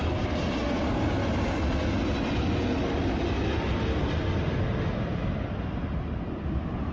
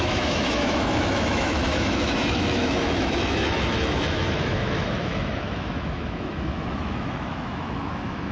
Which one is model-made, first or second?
second